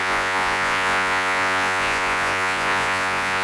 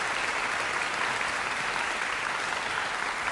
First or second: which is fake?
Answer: first